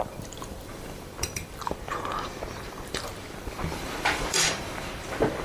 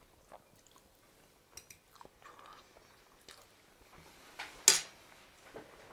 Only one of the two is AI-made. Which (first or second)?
first